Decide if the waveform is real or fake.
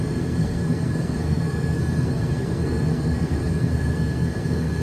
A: fake